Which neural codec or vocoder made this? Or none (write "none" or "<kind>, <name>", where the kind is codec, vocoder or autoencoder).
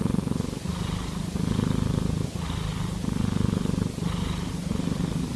none